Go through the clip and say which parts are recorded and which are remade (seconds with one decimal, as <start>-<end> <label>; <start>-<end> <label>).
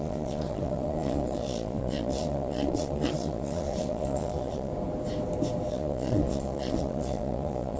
0.0-4.7 remade; 4.7-5.7 recorded; 5.7-7.8 remade